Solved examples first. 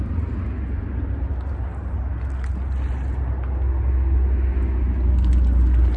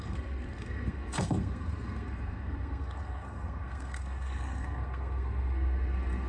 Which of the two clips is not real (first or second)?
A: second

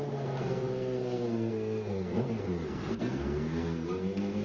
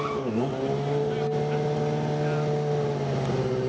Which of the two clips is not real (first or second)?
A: first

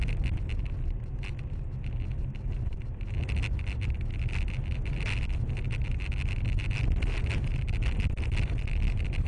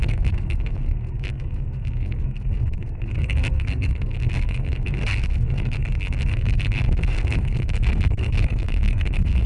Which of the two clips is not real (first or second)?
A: second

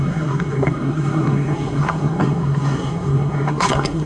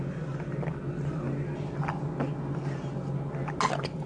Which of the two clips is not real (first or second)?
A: first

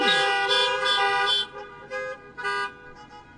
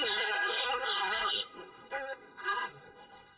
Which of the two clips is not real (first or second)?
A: second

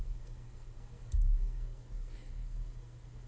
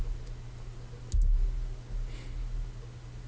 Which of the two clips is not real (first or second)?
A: first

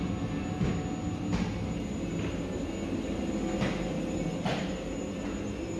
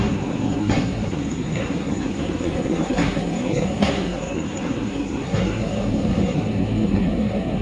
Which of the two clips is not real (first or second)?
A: second